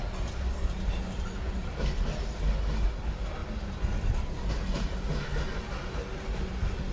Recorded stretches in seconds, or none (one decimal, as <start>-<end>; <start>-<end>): 0.0-3.4; 4.5-6.9